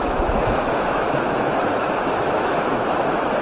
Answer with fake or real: fake